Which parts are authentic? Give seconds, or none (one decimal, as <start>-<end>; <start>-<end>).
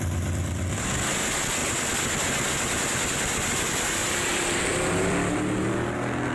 0.0-4.0; 5.3-6.3